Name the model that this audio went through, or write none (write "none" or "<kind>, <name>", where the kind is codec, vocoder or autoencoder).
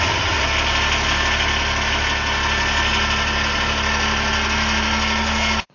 none